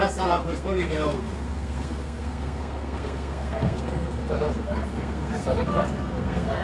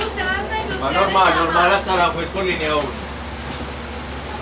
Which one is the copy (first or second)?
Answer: first